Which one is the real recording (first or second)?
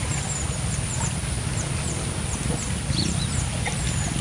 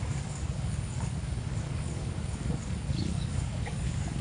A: first